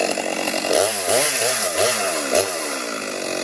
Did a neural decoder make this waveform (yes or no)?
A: no